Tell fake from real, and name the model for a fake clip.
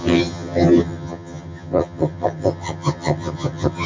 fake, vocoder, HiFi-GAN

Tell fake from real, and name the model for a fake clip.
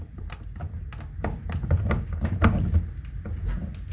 real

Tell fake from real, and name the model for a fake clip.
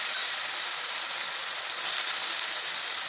real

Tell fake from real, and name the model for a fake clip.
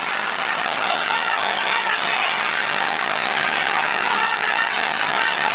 fake, vocoder, HiFi-GAN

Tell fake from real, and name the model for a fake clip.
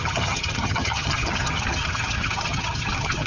fake, vocoder, HiFi-GAN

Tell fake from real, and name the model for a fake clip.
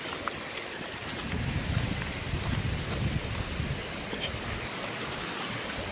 real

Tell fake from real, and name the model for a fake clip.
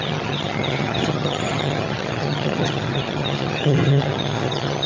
fake, vocoder, HiFi-GAN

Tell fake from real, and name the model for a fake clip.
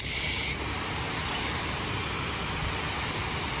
real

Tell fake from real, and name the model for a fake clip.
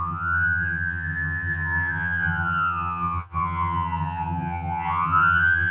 fake, vocoder, HiFi-GAN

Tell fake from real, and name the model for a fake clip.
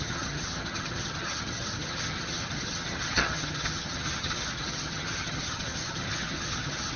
fake, vocoder, HiFi-GAN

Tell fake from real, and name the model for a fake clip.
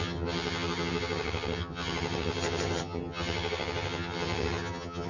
fake, vocoder, HiFi-GAN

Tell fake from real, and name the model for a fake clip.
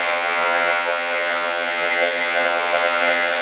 fake, vocoder, HiFi-GAN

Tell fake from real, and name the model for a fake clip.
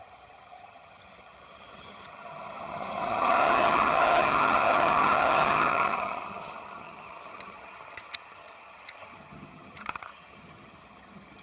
fake, vocoder, HiFi-GAN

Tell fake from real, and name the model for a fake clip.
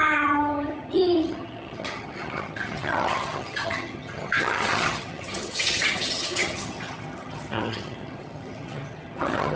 fake, vocoder, HiFi-GAN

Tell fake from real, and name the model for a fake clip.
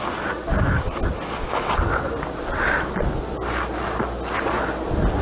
real